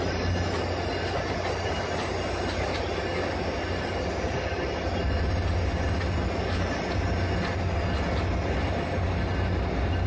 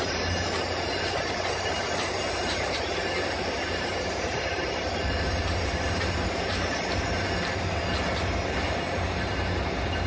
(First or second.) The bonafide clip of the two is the first